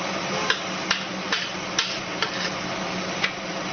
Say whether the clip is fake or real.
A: real